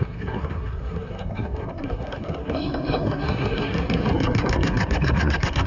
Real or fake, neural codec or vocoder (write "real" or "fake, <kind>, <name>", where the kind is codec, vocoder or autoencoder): fake, codec, SNAC